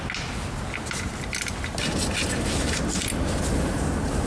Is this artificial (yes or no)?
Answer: no